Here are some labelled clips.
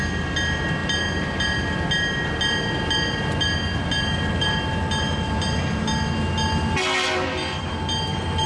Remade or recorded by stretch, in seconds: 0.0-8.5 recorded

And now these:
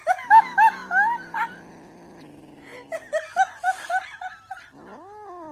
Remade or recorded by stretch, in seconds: 0.0-5.5 recorded